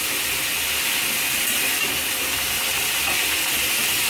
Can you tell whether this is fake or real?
real